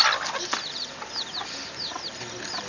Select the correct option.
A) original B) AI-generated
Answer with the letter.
A